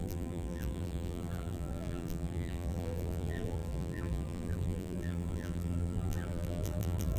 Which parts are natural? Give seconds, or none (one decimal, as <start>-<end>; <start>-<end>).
none